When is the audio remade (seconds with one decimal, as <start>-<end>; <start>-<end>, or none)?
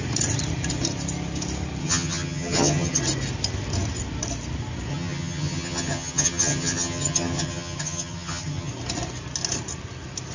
1.8-3.0; 4.9-8.7